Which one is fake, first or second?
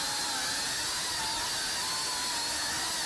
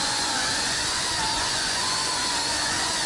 second